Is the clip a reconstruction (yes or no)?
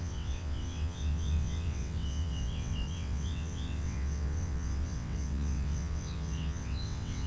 yes